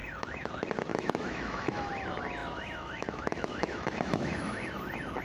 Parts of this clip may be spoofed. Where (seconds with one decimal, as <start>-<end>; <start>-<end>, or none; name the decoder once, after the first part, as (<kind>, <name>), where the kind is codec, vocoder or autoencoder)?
0.0-0.5 (autoencoder, DAC-VAE); 0.9-1.9; 2.4-5.2